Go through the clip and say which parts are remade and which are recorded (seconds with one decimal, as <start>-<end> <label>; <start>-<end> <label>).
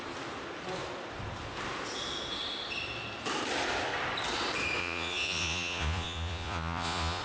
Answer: 0.0-4.8 recorded; 4.8-7.2 remade